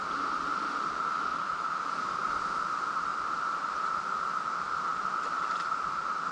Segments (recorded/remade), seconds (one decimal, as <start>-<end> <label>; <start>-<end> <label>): 0.0-6.3 recorded